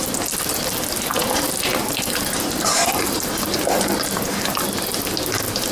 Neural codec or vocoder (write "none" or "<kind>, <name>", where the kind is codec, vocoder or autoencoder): none